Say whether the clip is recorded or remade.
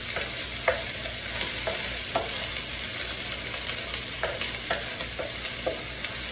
recorded